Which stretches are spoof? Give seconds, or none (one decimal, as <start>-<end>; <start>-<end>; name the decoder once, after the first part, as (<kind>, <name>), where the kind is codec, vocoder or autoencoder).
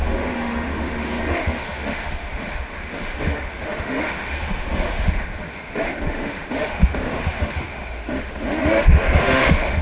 0.0-9.8 (autoencoder, DAC-VAE)